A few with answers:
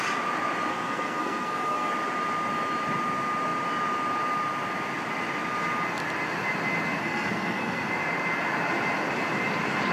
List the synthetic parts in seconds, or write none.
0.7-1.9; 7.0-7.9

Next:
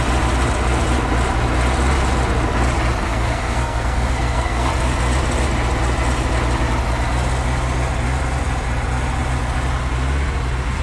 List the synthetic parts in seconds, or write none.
3.0-4.7

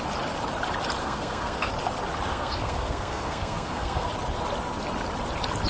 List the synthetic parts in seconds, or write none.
1.0-1.7; 2.3-4.1

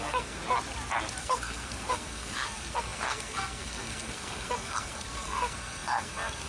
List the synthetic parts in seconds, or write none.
0.0-0.4; 1.2-6.5

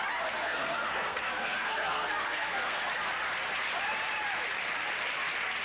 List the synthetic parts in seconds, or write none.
0.4-2.8

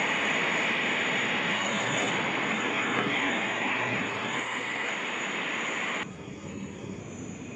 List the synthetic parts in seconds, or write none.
1.5-2.1; 2.5-4.9; 6.1-7.0

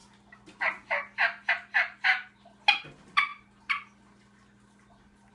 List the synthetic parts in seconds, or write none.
none

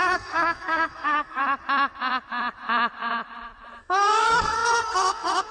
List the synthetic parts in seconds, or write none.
0.0-1.4; 3.8-5.5